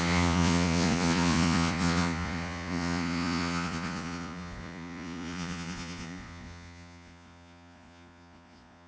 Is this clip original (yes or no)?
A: no